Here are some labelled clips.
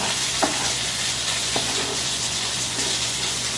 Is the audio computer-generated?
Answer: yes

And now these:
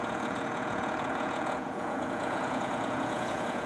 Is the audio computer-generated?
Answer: yes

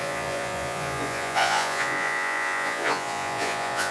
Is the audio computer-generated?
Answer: yes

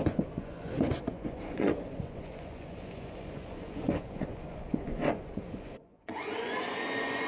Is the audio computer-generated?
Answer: yes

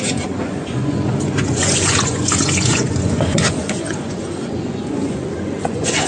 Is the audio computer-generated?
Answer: yes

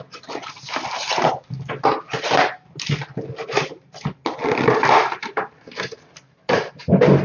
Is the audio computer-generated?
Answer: no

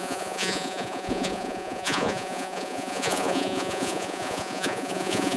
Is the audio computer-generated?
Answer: yes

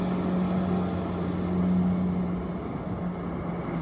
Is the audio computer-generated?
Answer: no